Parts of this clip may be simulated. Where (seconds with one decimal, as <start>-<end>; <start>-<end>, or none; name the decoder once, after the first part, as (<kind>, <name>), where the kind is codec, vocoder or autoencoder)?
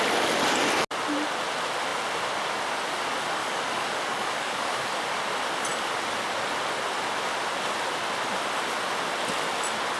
3.4-4.9 (codec, DAC)